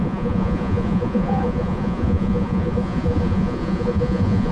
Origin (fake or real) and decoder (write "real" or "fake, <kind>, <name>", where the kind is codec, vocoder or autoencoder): fake, vocoder, Vocos